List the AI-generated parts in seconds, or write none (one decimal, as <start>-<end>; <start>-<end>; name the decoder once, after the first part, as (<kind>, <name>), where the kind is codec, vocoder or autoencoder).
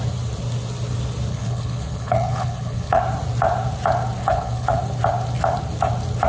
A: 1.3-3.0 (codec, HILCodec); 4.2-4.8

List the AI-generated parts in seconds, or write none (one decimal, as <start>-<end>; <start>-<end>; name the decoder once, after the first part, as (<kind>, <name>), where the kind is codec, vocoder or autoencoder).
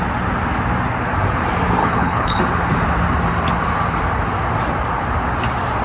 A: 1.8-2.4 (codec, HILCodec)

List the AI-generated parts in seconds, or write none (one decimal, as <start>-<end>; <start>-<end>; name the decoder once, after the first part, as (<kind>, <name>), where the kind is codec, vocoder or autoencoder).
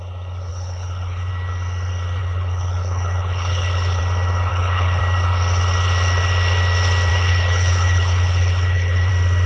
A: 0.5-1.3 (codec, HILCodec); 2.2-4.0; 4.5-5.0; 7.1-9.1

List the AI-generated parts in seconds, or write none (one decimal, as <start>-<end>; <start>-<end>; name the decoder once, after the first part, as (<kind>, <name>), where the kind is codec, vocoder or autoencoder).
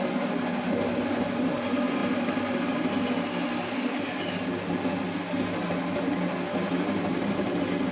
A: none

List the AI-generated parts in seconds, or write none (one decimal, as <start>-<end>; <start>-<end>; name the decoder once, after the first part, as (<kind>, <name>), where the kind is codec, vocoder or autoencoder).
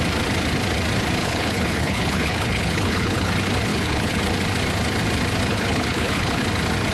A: 1.2-3.3 (codec, HILCodec); 3.7-4.2; 5.5-6.4